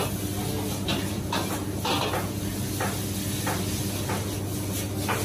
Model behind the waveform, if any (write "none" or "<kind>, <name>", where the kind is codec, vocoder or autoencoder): none